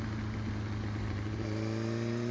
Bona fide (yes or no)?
yes